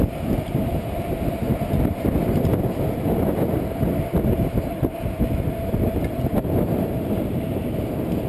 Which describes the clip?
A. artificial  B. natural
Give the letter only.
B